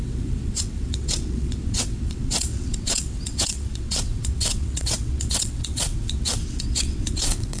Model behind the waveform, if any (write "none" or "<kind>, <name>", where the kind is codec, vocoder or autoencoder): vocoder, WaveNeXt